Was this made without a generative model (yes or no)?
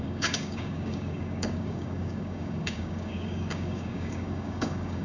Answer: no